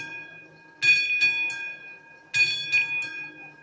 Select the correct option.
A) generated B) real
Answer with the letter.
B